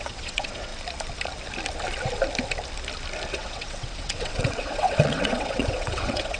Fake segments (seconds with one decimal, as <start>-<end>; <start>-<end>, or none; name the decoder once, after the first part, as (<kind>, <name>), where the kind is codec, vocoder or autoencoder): 0.0-0.7 (vocoder, WaveNeXt); 3.3-6.4